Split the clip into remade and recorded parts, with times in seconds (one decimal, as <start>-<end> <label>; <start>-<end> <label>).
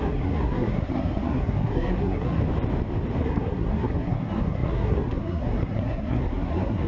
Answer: 0.0-2.4 remade; 2.4-3.2 recorded; 3.2-6.9 remade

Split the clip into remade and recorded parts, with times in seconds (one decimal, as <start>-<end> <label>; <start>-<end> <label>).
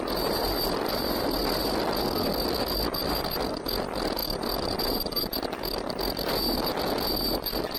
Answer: 0.0-1.4 remade; 1.4-2.9 recorded; 2.9-7.8 remade